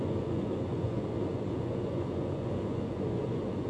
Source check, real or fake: fake